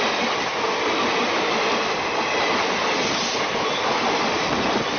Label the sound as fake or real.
real